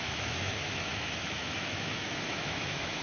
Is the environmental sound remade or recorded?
remade